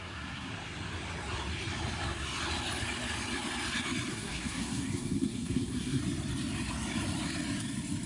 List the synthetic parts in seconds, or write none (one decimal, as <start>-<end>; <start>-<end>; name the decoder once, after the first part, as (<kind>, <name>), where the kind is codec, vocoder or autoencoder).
0.0-0.5 (codec, SNAC); 4.1-6.0